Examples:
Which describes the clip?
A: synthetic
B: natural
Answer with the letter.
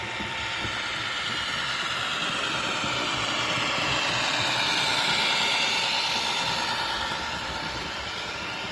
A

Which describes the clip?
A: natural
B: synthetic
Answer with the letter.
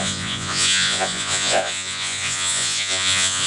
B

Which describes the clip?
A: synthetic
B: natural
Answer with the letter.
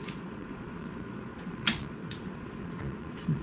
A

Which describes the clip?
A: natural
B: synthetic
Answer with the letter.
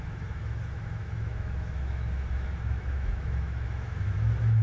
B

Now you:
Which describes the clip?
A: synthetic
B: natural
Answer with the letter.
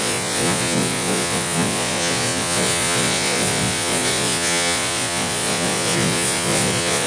A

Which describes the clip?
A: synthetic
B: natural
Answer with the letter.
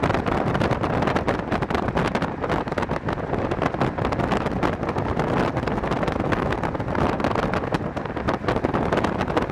B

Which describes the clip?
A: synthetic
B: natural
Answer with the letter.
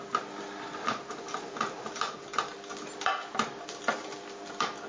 B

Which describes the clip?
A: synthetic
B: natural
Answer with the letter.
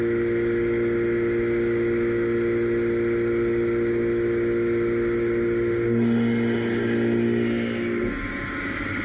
B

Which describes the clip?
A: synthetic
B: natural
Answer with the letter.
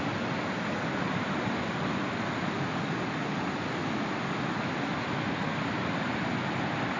B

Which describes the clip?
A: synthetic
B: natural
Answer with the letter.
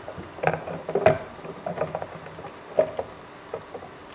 B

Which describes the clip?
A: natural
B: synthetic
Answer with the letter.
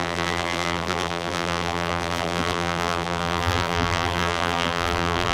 B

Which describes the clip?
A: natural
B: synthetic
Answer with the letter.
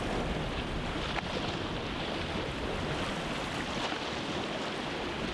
A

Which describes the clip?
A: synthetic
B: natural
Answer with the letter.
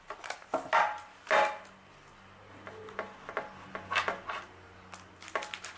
B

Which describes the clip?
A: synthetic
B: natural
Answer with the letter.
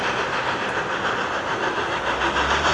B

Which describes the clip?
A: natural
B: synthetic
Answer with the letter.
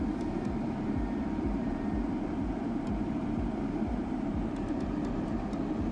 B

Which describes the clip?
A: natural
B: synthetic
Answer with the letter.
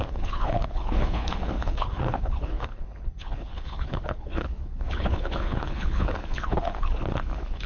B